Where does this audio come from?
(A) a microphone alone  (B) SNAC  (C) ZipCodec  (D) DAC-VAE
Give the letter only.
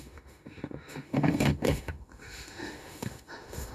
D